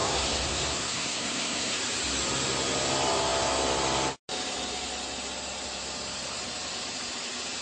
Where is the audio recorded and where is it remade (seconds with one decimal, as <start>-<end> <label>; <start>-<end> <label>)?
0.0-1.8 remade; 1.8-7.6 recorded